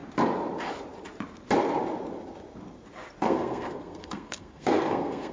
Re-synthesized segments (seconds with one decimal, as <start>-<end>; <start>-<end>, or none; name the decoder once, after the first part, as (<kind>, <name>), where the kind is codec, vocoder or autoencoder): 3.2-5.3 (codec, SNAC)